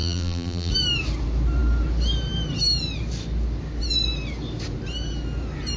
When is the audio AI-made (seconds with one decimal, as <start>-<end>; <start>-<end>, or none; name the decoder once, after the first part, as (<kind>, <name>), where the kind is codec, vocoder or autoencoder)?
0.0-0.7 (vocoder, BigVGAN v2)